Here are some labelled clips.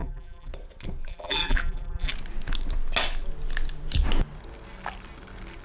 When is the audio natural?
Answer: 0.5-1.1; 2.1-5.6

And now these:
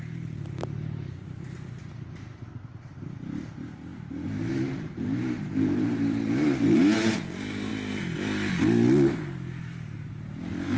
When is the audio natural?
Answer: 0.0-3.9; 6.2-10.8

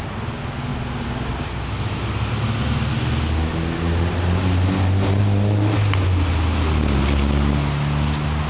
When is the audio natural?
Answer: 0.0-8.5